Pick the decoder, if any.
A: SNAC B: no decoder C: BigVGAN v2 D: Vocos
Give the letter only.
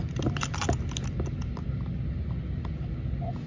B